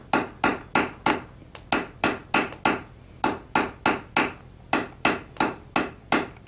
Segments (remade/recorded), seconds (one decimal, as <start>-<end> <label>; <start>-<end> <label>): 0.0-6.5 recorded